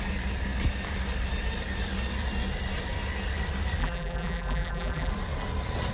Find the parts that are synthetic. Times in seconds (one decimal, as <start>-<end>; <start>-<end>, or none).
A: 3.8-5.1